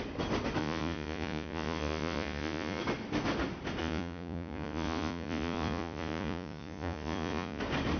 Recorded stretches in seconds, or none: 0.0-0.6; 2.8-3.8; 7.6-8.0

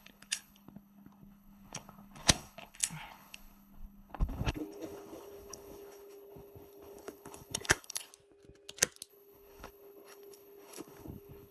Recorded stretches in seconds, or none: 8.1-9.1

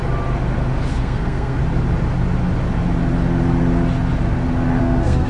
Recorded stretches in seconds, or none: 0.0-0.9; 1.6-4.8